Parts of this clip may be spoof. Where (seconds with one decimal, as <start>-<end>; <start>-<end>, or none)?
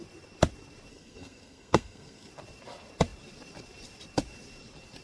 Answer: 0.9-2.3